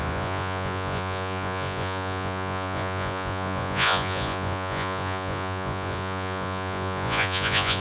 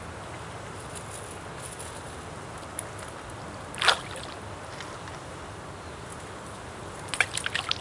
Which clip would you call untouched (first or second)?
second